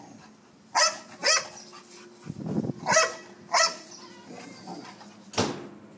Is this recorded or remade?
recorded